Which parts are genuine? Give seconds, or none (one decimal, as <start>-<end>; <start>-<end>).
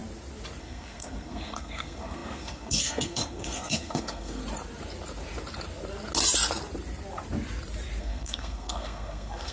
0.0-0.6; 4.4-8.0